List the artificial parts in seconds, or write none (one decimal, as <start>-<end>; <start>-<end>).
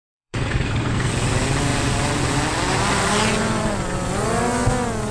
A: 0.0-1.1